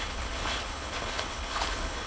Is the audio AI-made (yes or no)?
yes